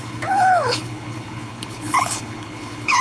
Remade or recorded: remade